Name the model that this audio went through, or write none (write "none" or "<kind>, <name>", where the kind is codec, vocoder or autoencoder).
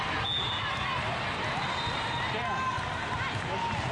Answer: none